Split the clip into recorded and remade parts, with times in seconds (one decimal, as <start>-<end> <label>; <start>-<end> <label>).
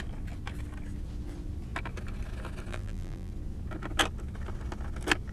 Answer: 0.0-2.7 recorded; 2.7-3.3 remade; 3.3-5.3 recorded